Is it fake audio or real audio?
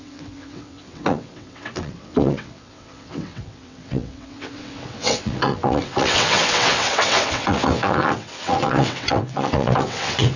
fake